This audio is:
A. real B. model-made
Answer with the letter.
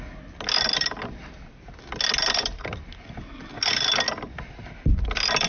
A